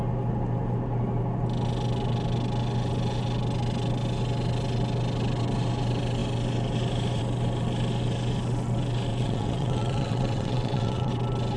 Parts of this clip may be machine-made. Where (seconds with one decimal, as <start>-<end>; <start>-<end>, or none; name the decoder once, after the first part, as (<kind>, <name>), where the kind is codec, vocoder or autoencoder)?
9.1-11.1 (vocoder, WaveNeXt)